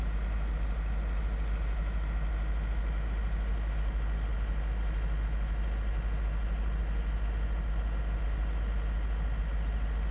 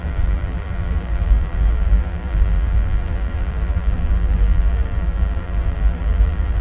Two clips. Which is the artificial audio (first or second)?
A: second